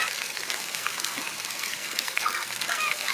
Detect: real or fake fake